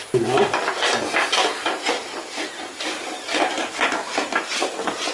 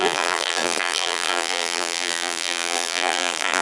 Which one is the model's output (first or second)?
second